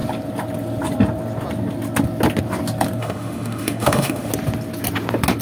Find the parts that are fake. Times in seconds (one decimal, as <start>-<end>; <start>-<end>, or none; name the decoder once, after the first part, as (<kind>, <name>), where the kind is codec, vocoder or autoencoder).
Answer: 3.0-4.3 (autoencoder, DAC-VAE)